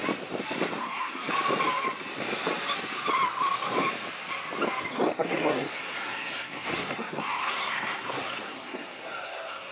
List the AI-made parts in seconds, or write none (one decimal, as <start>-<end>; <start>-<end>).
0.8-1.3; 4.9-9.7